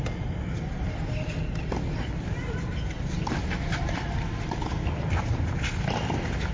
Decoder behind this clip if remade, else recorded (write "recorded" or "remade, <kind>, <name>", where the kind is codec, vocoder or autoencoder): recorded